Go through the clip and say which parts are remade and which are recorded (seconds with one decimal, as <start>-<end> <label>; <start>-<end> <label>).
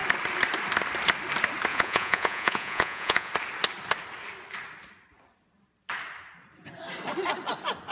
0.0-1.7 recorded; 1.7-3.3 remade; 3.3-7.9 recorded